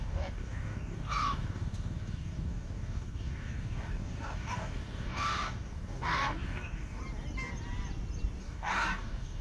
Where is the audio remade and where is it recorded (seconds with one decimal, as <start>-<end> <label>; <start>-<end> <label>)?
0.0-7.0 remade; 7.0-8.4 recorded; 8.4-9.4 remade